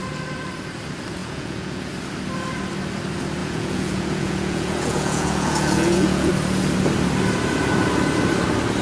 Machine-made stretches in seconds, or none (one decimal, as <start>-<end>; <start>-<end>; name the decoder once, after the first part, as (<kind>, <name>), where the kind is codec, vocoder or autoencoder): 1.2-1.9 (vocoder, Vocos); 3.4-6.3